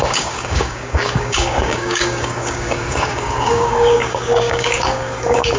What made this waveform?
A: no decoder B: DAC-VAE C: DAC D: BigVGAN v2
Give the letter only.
C